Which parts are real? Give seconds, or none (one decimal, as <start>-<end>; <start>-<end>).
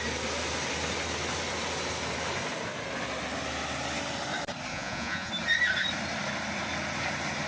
0.0-4.7; 5.3-7.5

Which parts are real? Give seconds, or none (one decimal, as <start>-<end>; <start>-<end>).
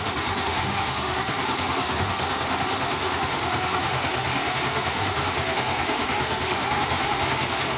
none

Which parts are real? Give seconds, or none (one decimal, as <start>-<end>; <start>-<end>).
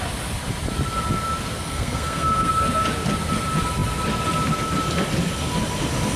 0.0-1.6; 2.5-6.2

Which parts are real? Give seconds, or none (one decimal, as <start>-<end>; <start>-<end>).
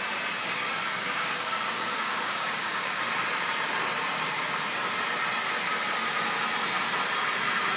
0.0-0.4; 3.1-7.8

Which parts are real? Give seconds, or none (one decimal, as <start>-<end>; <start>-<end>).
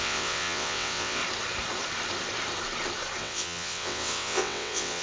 1.2-3.2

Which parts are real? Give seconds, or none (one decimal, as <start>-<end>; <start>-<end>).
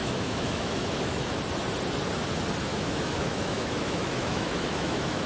1.4-2.7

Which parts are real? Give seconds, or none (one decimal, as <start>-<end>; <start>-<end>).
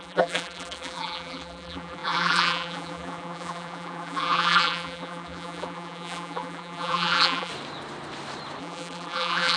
7.5-8.6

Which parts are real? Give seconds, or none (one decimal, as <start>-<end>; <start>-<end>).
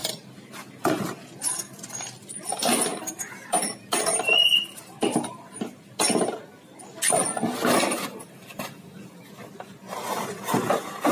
0.0-2.9; 5.6-11.1